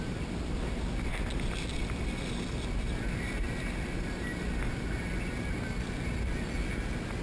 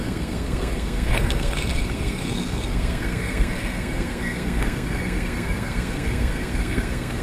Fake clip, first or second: second